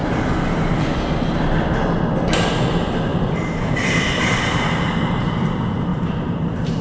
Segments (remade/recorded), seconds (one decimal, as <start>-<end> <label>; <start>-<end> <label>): 0.0-3.1 recorded; 3.1-5.5 remade; 5.5-5.9 recorded; 5.9-6.8 remade